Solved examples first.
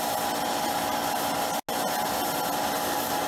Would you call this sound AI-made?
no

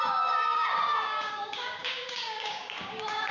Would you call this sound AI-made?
yes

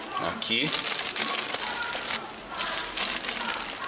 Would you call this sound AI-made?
no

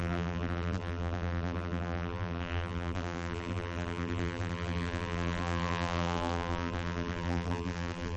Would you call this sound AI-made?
yes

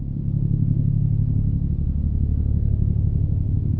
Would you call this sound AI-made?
no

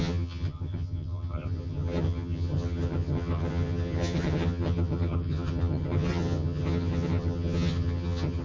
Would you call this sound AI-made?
yes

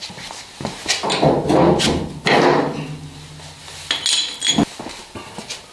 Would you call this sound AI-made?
no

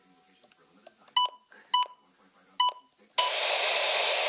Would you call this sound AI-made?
no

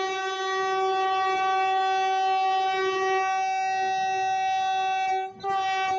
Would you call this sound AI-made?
no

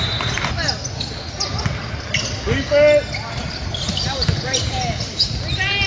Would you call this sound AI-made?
no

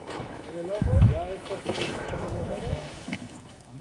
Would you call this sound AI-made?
yes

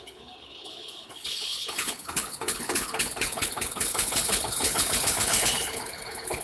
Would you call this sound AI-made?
yes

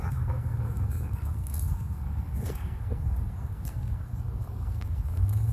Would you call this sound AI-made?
yes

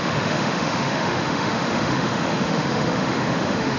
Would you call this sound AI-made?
yes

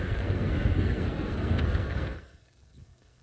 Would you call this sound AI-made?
yes